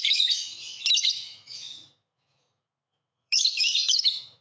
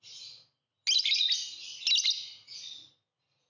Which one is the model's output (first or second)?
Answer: first